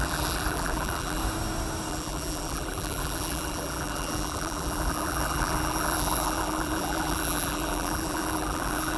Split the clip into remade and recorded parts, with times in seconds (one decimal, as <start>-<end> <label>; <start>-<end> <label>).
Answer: 0.0-1.2 remade; 1.2-1.9 recorded; 1.9-9.0 remade